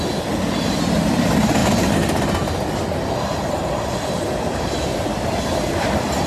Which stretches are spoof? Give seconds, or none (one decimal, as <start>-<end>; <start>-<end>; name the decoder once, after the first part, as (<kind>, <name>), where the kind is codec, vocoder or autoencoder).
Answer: none